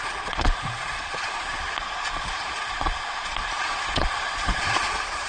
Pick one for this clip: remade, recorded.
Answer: remade